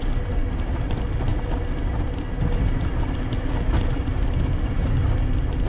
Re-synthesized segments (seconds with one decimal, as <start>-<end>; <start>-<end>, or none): none